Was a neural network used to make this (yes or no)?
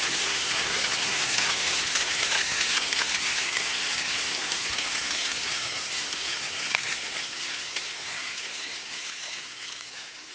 yes